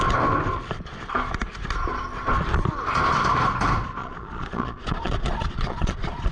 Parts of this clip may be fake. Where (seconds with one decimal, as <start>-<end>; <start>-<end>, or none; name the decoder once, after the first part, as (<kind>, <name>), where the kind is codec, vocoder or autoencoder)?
4.0-6.3 (vocoder, Vocos)

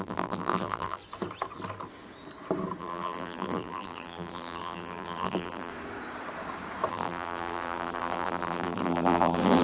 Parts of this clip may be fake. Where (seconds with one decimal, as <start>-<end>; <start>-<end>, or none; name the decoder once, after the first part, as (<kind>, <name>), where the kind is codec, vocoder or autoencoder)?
0.0-1.0 (vocoder, BigVGAN v2); 2.8-5.7; 6.9-9.6

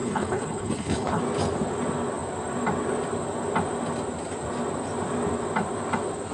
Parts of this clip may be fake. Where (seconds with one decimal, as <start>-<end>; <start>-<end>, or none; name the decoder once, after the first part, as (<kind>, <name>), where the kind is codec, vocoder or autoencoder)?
0.0-1.2 (codec, HILCodec)

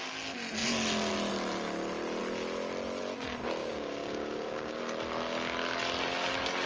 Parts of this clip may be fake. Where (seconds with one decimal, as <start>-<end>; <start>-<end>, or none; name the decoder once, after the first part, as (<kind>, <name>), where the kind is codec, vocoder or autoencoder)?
3.6-4.8 (codec, DAC)

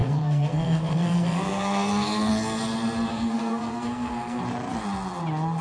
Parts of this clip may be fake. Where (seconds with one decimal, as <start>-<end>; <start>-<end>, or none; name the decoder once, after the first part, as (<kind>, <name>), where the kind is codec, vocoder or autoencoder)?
0.0-2.3 (codec, SNAC); 3.1-4.4